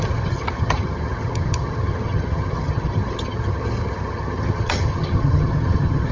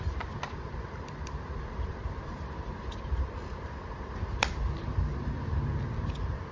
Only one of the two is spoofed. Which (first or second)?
first